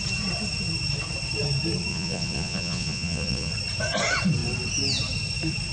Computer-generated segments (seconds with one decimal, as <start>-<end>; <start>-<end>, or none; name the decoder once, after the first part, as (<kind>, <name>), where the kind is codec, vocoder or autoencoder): 1.9-3.5 (vocoder, Vocos)